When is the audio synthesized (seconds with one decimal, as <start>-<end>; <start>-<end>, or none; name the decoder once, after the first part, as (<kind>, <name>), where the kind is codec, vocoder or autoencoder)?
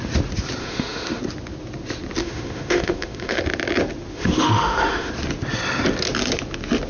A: 0.6-1.2 (autoencoder, DAC-VAE); 2.2-3.4; 4.1-5.1